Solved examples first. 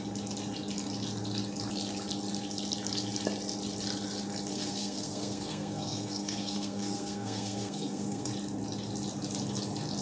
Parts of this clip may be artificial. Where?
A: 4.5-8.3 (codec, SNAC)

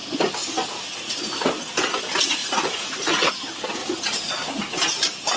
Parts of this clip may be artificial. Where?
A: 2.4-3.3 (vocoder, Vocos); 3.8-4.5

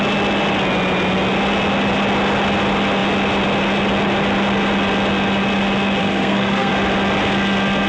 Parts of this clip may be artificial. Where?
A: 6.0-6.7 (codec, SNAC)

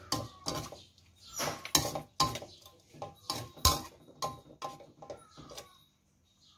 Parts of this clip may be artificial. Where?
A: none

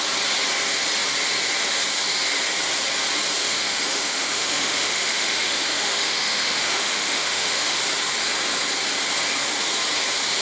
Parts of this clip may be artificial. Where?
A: 3.4-7.8 (autoencoder, DAC-VAE)